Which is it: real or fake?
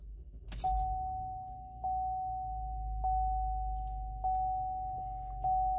real